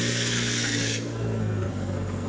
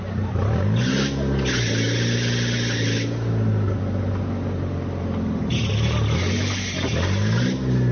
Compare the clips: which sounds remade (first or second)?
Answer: first